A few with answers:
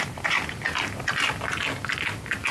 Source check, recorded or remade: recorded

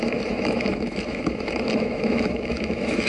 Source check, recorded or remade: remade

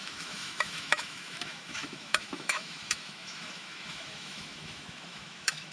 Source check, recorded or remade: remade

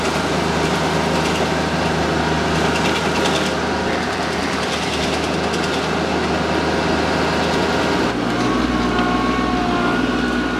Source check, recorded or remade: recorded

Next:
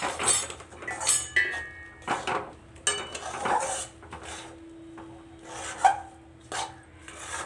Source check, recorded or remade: recorded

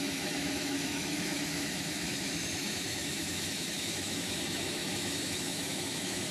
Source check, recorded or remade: remade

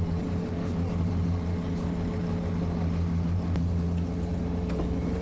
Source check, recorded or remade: recorded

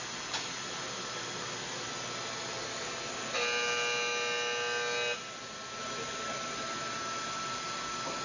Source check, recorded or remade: recorded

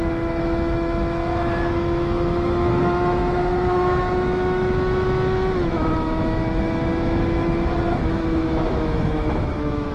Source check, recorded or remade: remade